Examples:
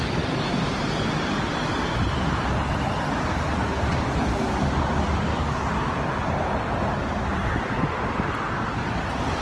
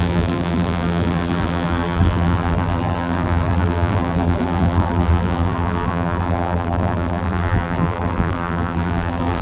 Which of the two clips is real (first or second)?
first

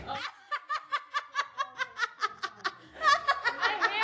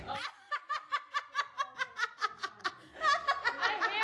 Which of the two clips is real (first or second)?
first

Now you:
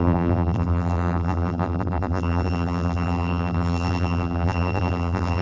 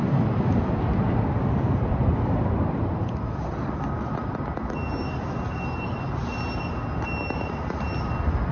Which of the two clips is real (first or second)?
second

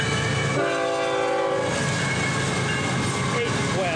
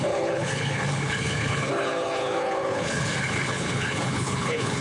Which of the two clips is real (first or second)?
first